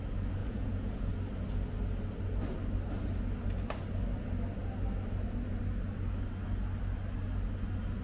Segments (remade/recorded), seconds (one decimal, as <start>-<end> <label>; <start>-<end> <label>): 0.0-0.4 recorded; 0.4-1.1 remade; 1.1-8.0 recorded